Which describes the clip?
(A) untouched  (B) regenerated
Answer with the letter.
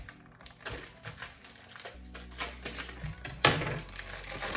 A